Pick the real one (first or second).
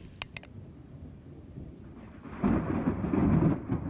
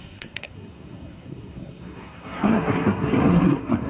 first